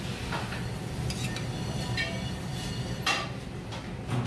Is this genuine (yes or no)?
yes